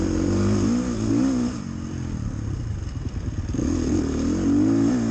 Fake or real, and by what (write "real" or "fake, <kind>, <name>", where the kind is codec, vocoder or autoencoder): real